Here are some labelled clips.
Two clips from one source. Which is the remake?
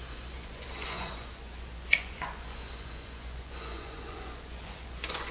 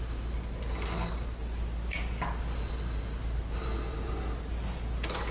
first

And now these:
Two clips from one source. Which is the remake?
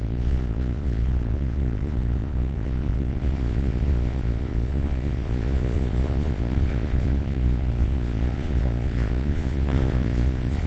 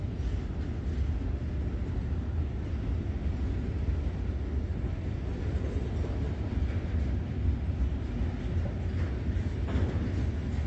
first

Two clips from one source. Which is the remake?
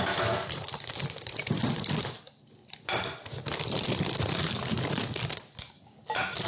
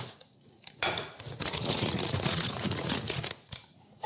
second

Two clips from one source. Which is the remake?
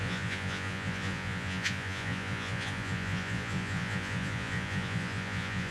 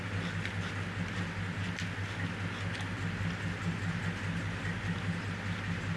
first